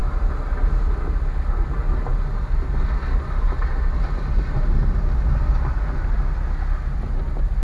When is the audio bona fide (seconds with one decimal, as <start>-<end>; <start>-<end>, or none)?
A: 0.0-7.6